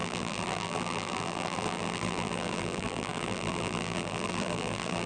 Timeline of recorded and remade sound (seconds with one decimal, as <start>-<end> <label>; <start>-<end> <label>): 0.0-5.1 remade